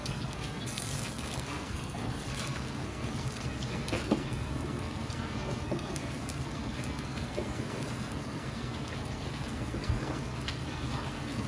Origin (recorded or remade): remade